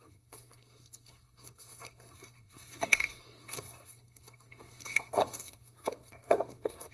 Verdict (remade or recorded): remade